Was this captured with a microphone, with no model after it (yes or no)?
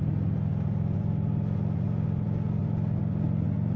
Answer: yes